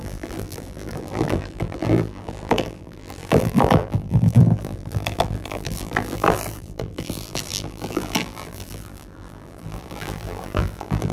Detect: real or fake fake